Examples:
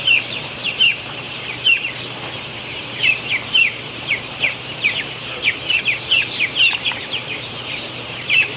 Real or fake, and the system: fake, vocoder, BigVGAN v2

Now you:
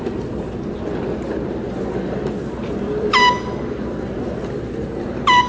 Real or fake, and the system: real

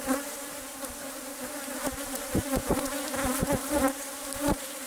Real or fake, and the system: real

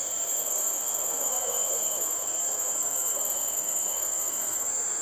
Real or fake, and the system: fake, codec, SNAC